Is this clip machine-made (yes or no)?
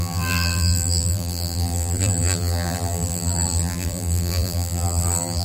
yes